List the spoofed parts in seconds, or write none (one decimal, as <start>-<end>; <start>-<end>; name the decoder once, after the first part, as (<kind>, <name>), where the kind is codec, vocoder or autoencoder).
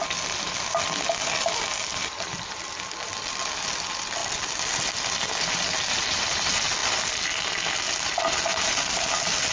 none